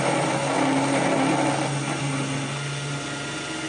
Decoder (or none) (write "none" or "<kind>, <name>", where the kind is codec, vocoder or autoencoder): none